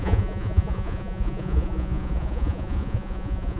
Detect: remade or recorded remade